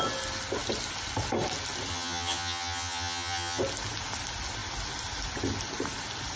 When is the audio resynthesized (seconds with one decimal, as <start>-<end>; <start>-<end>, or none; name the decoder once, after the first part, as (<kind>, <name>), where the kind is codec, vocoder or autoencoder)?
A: 1.9-3.6 (vocoder, HiFi-GAN)